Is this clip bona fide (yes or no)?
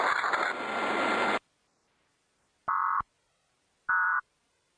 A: no